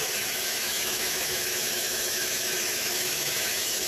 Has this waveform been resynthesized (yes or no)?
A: yes